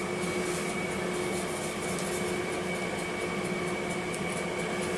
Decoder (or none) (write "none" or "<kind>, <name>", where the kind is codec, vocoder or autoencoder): none